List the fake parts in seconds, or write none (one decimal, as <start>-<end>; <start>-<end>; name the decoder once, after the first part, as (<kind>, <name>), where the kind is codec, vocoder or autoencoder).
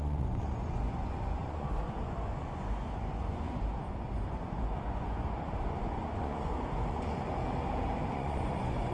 0.0-7.4 (vocoder, Vocos); 8.1-8.9